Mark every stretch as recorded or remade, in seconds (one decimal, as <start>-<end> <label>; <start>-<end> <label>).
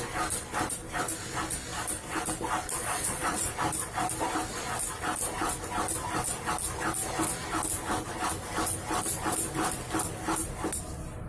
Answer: 0.0-2.8 recorded; 2.8-3.5 remade; 3.5-11.3 recorded